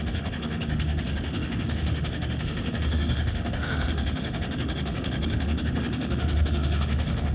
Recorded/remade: remade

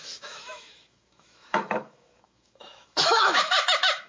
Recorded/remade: remade